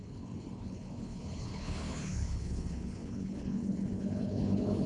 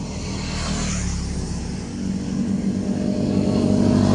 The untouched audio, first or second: second